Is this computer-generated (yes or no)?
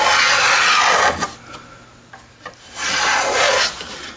no